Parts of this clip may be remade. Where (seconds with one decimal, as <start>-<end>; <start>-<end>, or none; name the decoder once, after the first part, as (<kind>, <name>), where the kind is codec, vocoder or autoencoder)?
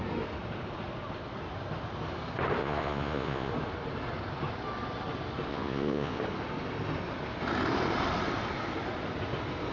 2.6-3.5 (vocoder, Vocos); 5.5-6.2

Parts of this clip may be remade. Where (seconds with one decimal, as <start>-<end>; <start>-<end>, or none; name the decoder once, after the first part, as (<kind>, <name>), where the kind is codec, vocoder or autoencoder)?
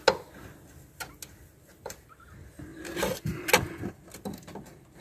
none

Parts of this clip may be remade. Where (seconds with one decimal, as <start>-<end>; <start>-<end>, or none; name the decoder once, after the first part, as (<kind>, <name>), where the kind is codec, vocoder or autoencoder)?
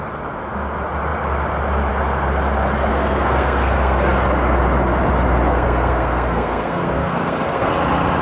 2.9-4.1 (codec, SNAC); 5.5-7.7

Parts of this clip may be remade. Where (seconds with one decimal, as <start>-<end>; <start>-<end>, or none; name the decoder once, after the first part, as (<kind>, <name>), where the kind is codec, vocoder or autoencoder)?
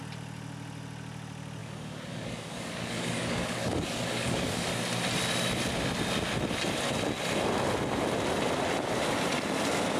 1.6-4.7 (codec, DAC)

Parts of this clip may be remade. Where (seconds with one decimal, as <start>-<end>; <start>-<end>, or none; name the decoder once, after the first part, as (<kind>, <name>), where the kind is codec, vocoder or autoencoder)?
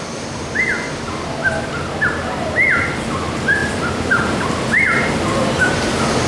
3.6-5.1 (vocoder, BigVGAN v2)